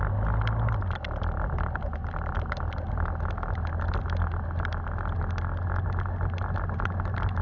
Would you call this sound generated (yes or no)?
no